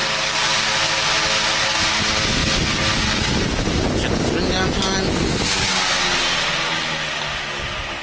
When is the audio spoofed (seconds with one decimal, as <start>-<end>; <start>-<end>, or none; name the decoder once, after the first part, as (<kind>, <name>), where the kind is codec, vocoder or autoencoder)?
none